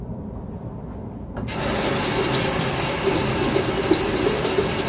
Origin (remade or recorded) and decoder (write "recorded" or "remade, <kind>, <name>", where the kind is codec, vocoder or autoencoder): recorded